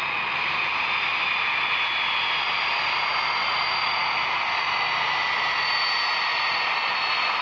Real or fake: real